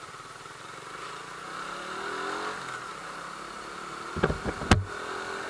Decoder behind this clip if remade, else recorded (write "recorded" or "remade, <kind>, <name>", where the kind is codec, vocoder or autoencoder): recorded